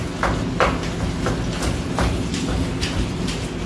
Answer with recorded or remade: recorded